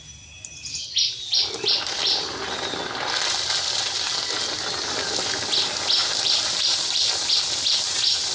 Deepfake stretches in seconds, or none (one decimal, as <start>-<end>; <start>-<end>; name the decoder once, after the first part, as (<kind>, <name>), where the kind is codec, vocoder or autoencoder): 6.0-7.3 (vocoder, BigVGAN v2)